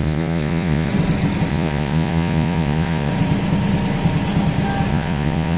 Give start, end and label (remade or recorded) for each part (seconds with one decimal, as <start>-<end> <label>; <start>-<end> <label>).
0.0-0.9 remade; 0.9-1.5 recorded; 1.5-3.1 remade; 3.1-4.9 recorded; 4.9-5.6 remade